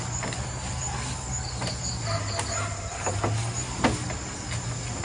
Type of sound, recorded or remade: recorded